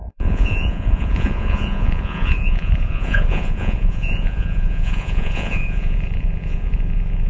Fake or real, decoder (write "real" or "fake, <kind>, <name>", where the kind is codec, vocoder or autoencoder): fake, vocoder, Vocos